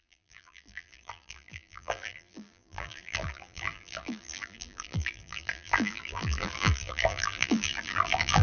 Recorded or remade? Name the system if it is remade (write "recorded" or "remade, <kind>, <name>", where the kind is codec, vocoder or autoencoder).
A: remade, vocoder, BigVGAN v2